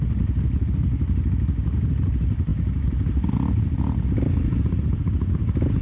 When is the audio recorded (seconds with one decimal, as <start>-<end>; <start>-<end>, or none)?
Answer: 0.0-5.8